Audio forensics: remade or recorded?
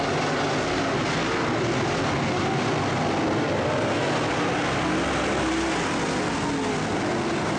recorded